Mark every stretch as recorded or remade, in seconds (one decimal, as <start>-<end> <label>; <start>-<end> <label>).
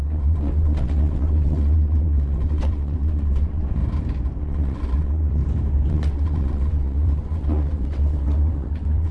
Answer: 0.0-3.8 remade; 3.8-4.4 recorded; 4.4-5.4 remade; 5.4-5.9 recorded; 5.9-9.1 remade